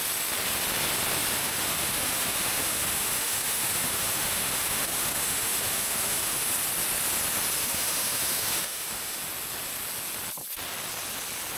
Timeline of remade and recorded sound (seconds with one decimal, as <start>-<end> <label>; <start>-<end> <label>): 0.0-1.4 recorded; 1.4-6.5 remade; 6.5-7.6 recorded; 7.6-9.2 remade; 9.2-11.6 recorded